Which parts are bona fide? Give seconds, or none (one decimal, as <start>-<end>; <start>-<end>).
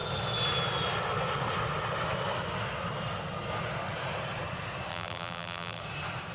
0.0-4.9; 5.8-6.3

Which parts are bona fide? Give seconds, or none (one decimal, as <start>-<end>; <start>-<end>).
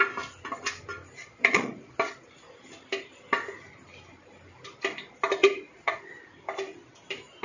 0.0-1.2; 1.9-5.4; 5.9-7.4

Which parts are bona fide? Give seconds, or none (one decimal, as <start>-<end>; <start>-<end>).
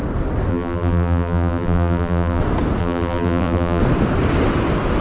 0.0-0.5; 2.4-2.8; 3.8-5.0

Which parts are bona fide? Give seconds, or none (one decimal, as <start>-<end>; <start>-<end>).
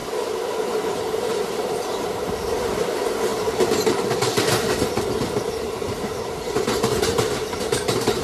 0.0-0.9